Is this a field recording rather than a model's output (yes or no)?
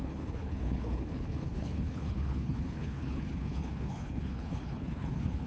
no